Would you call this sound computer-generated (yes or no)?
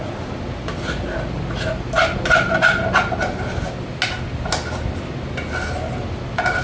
no